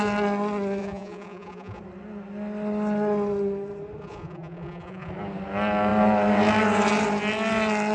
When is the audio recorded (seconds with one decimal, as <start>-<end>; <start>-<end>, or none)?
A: 0.0-0.8; 1.8-4.0; 5.1-7.9